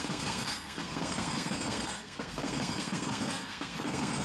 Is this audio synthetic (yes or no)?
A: yes